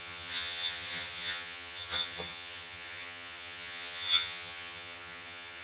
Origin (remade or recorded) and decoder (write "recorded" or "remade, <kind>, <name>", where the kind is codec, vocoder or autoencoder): remade, vocoder, HiFi-GAN